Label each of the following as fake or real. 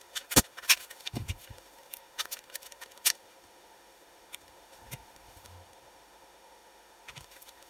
fake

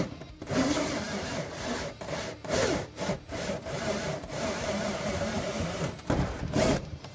fake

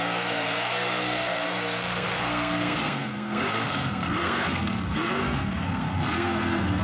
fake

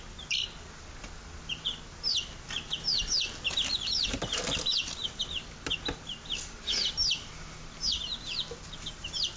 real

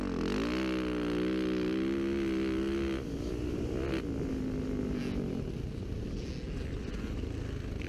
real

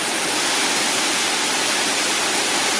real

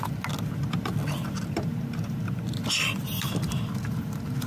real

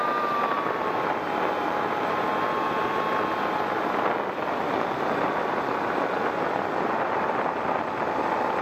fake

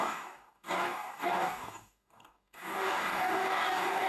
fake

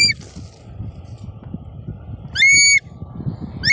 real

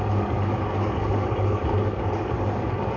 fake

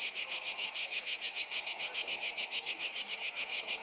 fake